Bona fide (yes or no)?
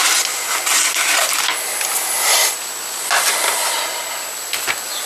yes